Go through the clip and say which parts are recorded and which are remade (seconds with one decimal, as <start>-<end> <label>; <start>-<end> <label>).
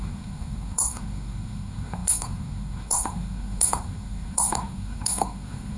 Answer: 0.0-5.8 remade